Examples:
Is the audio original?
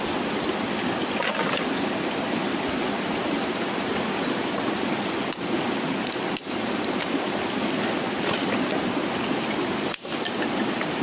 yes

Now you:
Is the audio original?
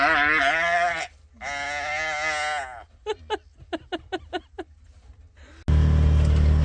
yes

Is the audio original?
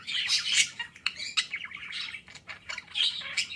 yes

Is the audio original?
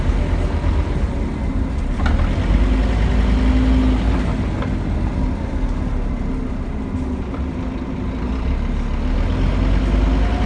yes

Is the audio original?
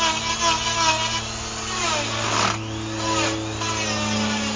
yes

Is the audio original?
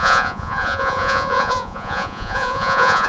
no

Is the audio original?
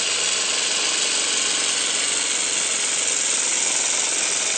yes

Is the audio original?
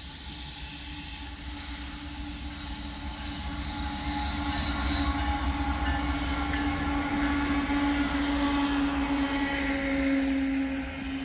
yes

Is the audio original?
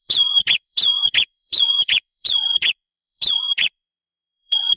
no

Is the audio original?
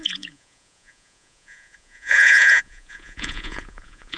no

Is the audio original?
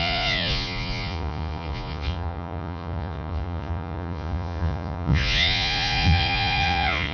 no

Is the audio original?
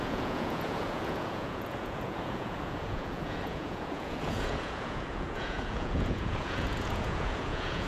no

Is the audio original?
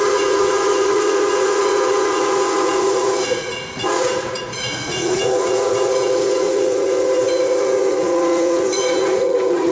no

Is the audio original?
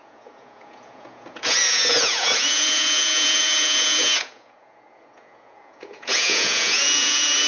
no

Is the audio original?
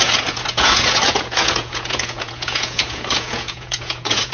no